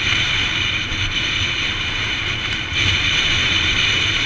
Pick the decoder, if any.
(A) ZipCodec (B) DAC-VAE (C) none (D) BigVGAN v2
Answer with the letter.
D